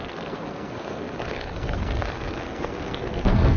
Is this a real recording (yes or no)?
no